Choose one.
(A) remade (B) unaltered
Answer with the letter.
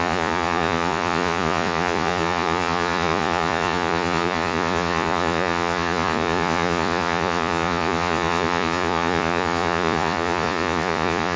A